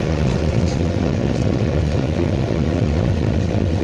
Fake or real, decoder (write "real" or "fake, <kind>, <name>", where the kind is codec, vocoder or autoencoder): fake, vocoder, WaveNeXt